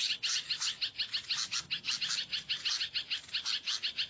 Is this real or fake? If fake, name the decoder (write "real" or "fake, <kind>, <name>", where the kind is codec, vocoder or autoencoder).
real